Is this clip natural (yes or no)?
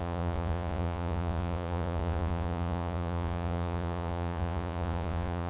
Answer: no